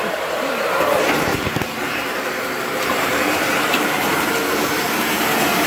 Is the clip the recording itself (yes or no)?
no